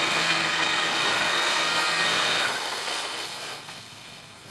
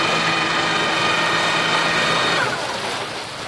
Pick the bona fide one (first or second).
second